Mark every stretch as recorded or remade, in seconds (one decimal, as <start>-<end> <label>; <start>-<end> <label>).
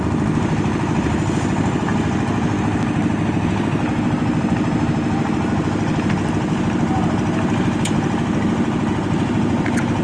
0.0-10.0 recorded